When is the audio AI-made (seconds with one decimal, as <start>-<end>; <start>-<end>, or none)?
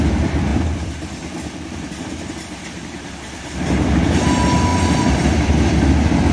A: 0.5-4.3; 4.7-5.8